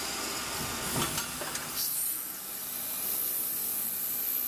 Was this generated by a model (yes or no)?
no